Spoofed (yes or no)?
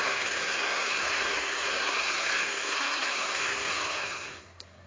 yes